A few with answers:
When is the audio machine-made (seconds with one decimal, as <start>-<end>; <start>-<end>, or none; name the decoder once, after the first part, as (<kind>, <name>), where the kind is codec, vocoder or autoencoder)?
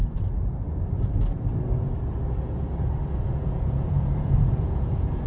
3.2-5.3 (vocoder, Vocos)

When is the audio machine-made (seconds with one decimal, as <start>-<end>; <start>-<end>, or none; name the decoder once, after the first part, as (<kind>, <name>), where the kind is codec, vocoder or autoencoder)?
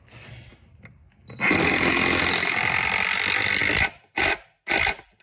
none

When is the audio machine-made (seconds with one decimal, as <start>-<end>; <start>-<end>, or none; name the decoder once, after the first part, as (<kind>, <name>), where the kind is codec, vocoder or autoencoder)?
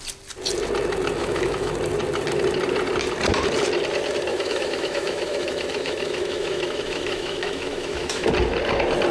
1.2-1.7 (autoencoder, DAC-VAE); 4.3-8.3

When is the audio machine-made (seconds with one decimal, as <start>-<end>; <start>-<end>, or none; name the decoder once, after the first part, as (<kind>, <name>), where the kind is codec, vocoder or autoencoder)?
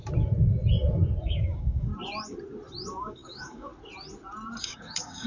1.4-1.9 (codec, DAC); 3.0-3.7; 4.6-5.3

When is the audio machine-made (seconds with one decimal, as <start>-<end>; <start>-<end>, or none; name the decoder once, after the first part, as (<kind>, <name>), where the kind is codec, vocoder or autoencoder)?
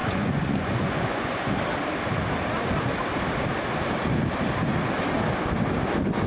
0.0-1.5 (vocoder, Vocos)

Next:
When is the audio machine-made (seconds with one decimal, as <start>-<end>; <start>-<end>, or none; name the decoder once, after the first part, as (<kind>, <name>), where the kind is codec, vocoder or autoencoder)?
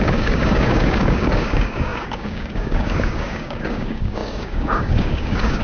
0.0-5.6 (codec, DAC)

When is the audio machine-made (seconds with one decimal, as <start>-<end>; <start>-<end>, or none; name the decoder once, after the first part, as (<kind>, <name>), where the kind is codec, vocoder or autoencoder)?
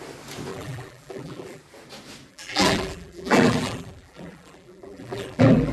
0.5-1.6 (vocoder, BigVGAN v2); 2.3-5.7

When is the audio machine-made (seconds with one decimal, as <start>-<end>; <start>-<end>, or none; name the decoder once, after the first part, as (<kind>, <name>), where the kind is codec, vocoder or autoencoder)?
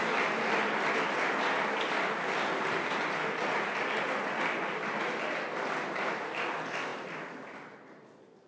none